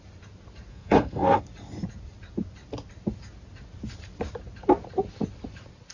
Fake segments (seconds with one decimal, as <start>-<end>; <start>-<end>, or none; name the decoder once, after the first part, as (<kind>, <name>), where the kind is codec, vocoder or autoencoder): 0.7-1.4 (codec, SNAC)

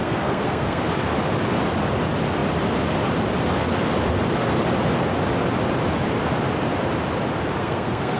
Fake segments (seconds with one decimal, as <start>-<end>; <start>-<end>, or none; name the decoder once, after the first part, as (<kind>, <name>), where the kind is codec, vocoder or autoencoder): 0.0-0.8 (codec, SNAC); 7.6-8.2